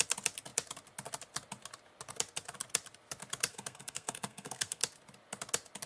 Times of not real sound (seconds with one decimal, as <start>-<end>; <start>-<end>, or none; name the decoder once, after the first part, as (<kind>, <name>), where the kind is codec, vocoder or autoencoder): 3.5-4.8 (codec, SNAC)